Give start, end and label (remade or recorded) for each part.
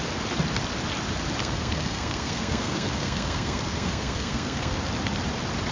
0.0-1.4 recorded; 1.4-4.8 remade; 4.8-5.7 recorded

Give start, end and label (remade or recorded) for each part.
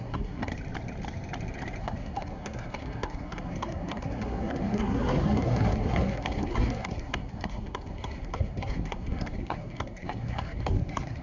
0.0-0.5 remade; 0.5-1.8 recorded; 1.8-11.2 remade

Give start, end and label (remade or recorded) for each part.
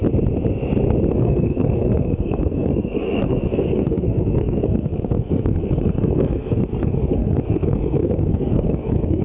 0.0-1.1 recorded; 1.1-9.2 remade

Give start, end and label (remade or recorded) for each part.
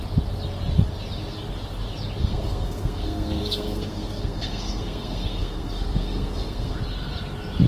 0.0-2.2 recorded; 2.2-6.8 remade; 6.8-7.7 recorded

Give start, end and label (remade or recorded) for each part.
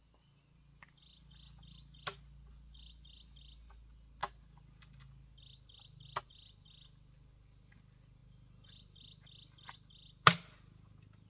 0.0-11.3 recorded